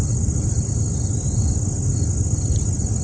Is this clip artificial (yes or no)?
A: no